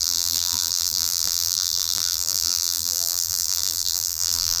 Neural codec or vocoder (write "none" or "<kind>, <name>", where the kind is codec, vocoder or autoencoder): vocoder, BigVGAN v2